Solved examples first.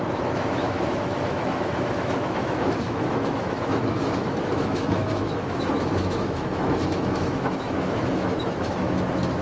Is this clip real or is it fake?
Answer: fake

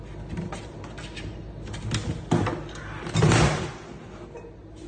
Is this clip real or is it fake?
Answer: real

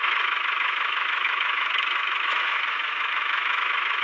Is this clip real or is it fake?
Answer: fake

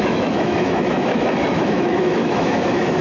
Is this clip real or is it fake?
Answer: fake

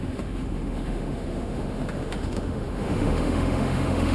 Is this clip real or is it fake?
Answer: fake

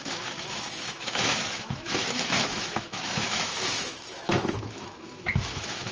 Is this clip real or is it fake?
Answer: fake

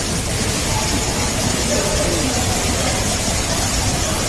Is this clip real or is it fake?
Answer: real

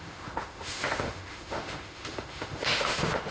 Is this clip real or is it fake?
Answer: fake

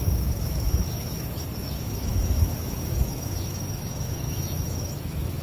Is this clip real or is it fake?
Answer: fake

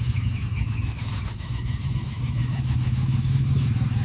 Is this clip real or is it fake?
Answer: fake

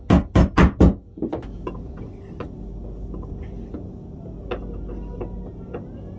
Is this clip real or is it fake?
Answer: real